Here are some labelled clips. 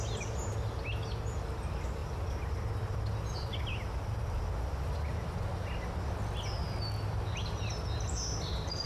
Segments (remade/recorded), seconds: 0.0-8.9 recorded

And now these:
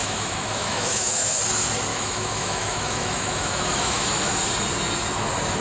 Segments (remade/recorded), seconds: 0.0-1.4 remade; 1.4-1.9 recorded; 1.9-4.4 remade; 4.4-5.6 recorded

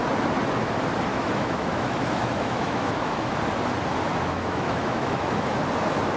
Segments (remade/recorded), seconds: 0.0-1.1 recorded; 1.1-3.4 remade; 3.4-4.1 recorded; 4.1-5.6 remade; 5.6-6.2 recorded

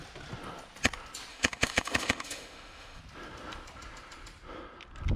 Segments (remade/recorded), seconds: 0.0-1.3 recorded; 1.3-3.0 remade; 3.0-5.2 recorded

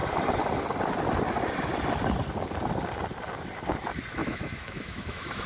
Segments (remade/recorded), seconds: 0.0-4.2 recorded; 4.2-5.5 remade

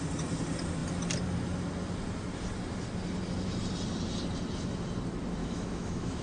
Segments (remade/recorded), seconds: 0.0-5.4 recorded; 5.4-6.2 remade

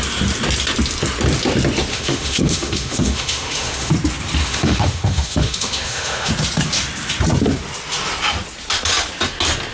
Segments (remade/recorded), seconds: 0.0-1.9 recorded; 1.9-3.9 remade; 3.9-4.4 recorded; 4.4-6.3 remade; 6.3-9.7 recorded

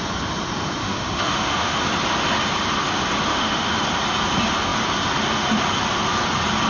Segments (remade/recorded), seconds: 0.0-0.8 recorded; 0.8-1.8 remade; 1.8-3.3 recorded; 3.3-3.8 remade; 3.8-6.7 recorded